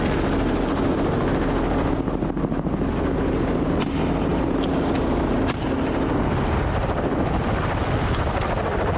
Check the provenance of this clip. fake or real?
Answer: real